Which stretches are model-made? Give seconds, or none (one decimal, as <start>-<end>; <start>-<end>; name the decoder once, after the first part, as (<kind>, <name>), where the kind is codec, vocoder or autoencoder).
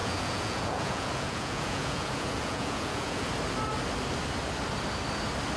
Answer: 0.0-3.3 (vocoder, Vocos)